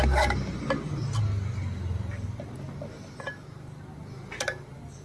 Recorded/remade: recorded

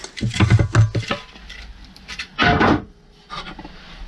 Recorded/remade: recorded